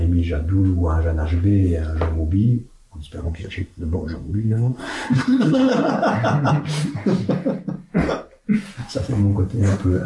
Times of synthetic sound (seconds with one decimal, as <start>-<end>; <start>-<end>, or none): 3.2-5.9

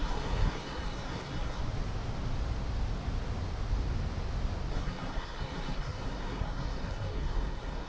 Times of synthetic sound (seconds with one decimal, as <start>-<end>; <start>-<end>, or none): 0.0-1.6; 4.7-7.9

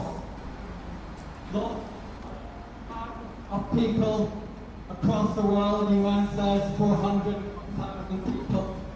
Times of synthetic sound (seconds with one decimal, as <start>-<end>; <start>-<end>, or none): 5.8-6.8